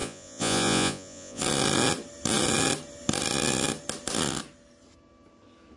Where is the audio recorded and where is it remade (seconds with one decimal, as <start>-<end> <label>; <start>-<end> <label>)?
0.0-1.4 remade; 1.4-5.8 recorded

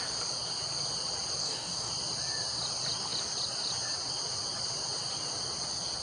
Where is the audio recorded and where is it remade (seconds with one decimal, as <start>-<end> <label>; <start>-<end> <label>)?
0.0-1.4 recorded; 1.4-1.9 remade; 1.9-6.0 recorded

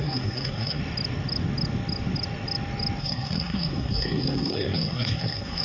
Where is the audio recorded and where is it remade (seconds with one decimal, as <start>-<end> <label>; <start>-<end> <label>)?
0.0-0.8 remade; 0.8-3.0 recorded; 3.0-5.6 remade